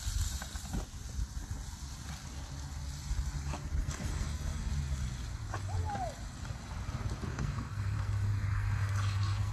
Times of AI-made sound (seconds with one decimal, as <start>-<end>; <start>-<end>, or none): 3.8-4.7; 7.3-9.5